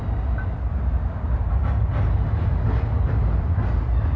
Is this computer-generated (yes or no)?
no